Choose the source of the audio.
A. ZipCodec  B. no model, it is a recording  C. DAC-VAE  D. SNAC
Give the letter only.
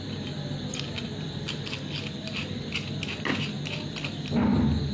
B